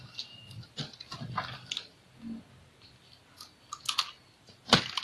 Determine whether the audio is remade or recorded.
recorded